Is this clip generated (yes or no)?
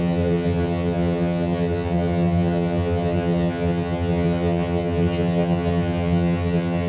yes